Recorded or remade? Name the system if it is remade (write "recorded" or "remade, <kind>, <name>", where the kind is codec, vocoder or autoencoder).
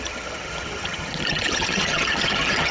remade, vocoder, HiFi-GAN